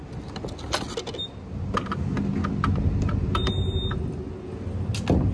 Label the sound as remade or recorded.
recorded